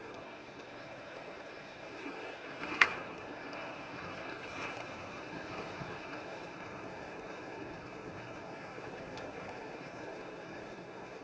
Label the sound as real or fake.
fake